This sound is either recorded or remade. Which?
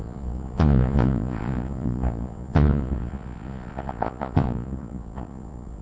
remade